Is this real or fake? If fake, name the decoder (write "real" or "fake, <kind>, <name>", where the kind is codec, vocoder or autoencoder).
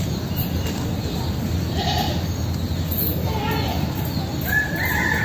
real